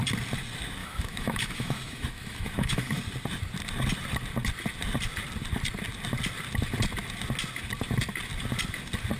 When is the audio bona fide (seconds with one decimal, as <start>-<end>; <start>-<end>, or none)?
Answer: 0.0-0.8; 3.0-9.2